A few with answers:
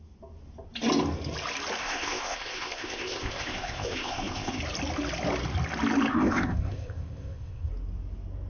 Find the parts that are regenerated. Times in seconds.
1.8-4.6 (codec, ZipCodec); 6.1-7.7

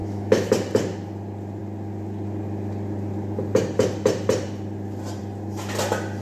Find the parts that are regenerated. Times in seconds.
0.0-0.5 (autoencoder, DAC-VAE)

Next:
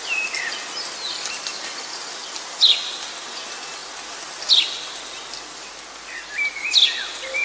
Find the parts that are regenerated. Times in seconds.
none

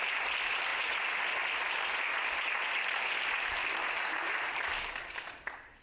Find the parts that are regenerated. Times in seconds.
none